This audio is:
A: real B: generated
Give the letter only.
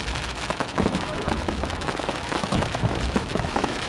B